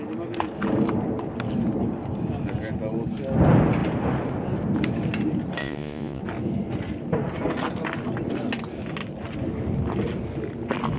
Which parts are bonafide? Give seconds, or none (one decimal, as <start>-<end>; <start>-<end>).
0.0-5.6; 6.2-11.0